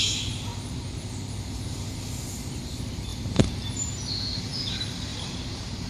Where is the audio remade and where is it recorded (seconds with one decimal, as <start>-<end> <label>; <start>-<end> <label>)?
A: 0.0-0.5 recorded; 0.5-2.0 remade; 2.0-3.1 recorded; 3.1-4.5 remade; 4.5-5.1 recorded; 5.1-5.9 remade